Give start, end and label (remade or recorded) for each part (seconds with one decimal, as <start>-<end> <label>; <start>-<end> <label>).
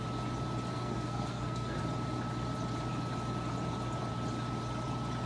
0.0-0.7 recorded; 0.7-1.8 remade; 1.8-5.3 recorded